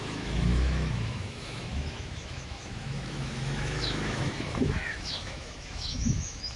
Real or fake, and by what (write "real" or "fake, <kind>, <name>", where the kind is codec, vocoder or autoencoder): fake, autoencoder, DAC-VAE